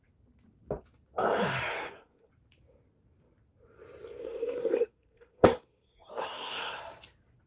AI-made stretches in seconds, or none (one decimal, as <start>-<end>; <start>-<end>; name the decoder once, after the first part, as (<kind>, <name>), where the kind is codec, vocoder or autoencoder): 1.7-2.3 (codec, SNAC); 4.2-6.8